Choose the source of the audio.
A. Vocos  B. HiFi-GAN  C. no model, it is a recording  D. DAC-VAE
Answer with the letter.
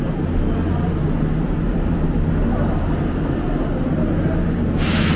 C